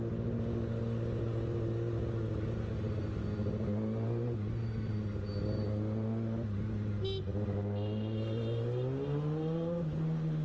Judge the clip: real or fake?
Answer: real